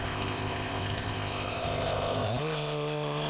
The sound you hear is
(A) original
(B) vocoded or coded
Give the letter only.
B